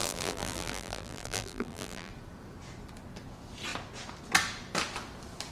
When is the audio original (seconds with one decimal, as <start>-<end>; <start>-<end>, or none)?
2.1-5.5